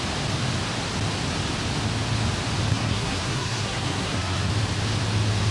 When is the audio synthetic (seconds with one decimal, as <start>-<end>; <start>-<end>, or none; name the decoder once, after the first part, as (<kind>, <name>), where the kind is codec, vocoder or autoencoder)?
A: 2.7-4.5 (codec, SNAC)